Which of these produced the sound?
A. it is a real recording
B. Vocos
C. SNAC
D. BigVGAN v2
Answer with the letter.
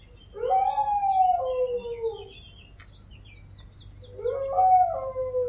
A